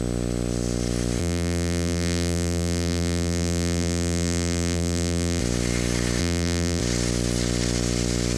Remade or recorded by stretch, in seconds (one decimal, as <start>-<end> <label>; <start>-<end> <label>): 0.0-1.2 recorded; 1.2-5.4 remade; 5.4-6.2 recorded; 6.2-6.8 remade; 6.8-8.4 recorded